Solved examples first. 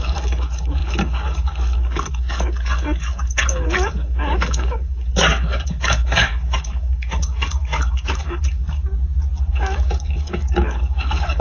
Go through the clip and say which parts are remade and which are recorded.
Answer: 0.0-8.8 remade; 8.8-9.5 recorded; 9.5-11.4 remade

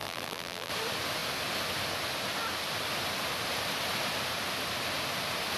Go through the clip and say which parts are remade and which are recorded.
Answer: 0.0-0.7 remade; 0.7-5.6 recorded

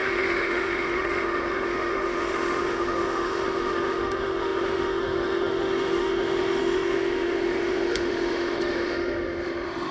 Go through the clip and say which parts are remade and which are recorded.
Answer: 0.0-9.9 remade

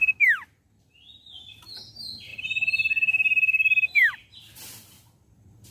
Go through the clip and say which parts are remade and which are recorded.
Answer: 0.0-5.7 recorded

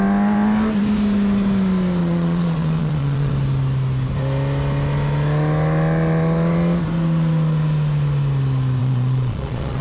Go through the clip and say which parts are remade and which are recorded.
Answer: 0.0-2.0 recorded; 2.0-3.3 remade; 3.3-8.8 recorded; 8.8-9.8 remade

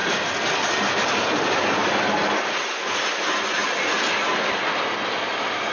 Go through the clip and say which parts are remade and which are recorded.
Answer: 0.0-5.7 recorded